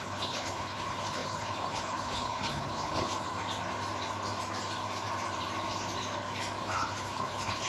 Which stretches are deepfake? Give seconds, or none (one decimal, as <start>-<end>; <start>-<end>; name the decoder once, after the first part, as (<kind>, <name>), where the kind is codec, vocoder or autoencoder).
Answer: 0.0-3.3 (codec, HILCodec); 6.6-7.7